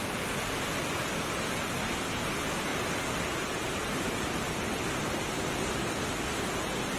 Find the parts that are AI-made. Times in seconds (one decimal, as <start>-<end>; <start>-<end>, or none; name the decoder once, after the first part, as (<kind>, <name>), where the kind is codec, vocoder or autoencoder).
none